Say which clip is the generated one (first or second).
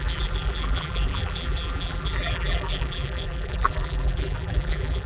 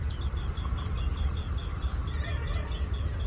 first